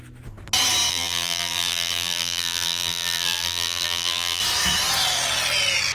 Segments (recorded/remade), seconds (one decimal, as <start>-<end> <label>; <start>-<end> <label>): 0.0-0.9 recorded; 0.9-4.4 remade; 4.4-5.9 recorded